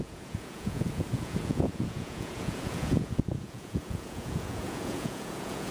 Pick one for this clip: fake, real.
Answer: fake